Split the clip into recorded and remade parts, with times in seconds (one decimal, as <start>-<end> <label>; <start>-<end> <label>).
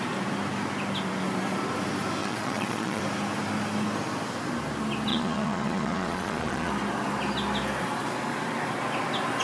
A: 0.0-2.2 recorded; 2.2-3.0 remade; 3.0-5.1 recorded; 5.1-6.7 remade; 6.7-9.4 recorded